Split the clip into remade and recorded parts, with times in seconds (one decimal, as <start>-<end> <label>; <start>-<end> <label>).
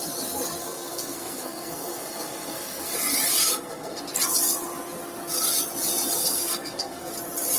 0.0-0.6 recorded; 0.6-2.9 remade; 2.9-3.4 recorded; 3.4-4.0 remade; 4.0-6.2 recorded; 6.2-7.1 remade; 7.1-7.6 recorded